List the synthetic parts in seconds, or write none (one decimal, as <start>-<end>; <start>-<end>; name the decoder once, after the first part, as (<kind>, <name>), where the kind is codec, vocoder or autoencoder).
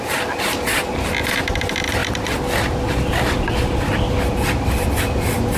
none